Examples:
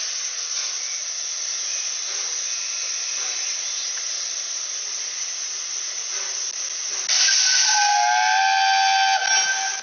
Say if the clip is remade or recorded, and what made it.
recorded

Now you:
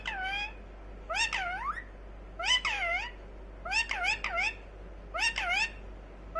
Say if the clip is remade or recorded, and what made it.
recorded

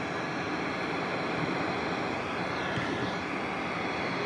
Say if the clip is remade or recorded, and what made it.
recorded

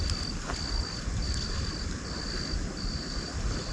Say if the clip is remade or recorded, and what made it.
recorded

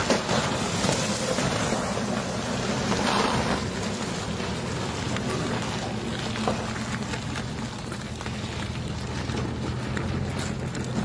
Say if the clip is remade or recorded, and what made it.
recorded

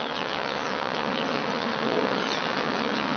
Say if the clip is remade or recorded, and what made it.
remade, vocoder, WaveNeXt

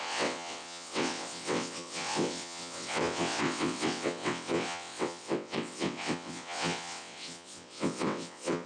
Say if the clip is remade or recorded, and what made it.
remade, vocoder, WaveNeXt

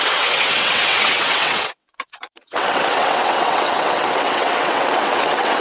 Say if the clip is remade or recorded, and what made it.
remade, vocoder, WaveNeXt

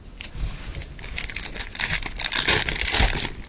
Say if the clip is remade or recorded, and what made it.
recorded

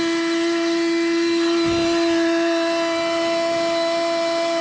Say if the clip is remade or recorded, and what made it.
recorded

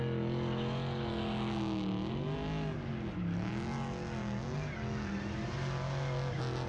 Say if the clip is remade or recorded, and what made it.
recorded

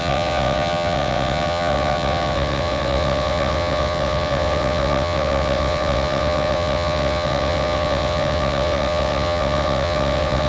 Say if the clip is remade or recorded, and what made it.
remade, vocoder, WaveNeXt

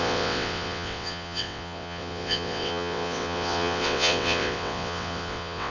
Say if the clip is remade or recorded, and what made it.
remade, vocoder, WaveNeXt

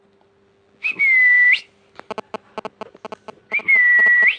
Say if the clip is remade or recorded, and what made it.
recorded